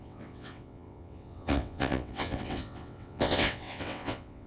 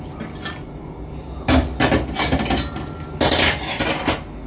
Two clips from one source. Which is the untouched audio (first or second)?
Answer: second